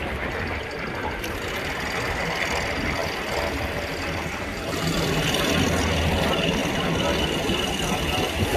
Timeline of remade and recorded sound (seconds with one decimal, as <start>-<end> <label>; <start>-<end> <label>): 0.0-8.6 recorded